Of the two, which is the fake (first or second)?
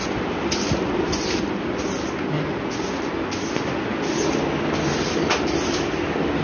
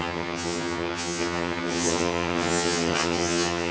second